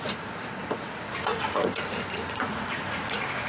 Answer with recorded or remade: remade